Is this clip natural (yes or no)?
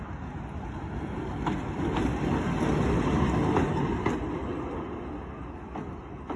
yes